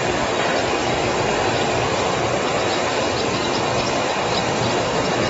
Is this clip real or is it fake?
real